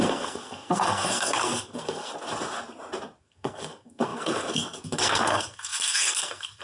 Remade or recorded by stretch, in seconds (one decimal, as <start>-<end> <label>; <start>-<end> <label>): 0.0-2.1 remade; 2.1-3.2 recorded; 3.2-6.6 remade